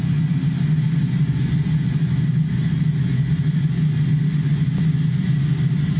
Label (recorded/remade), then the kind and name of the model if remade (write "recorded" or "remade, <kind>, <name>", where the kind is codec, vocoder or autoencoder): recorded